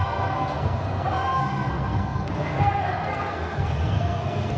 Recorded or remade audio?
remade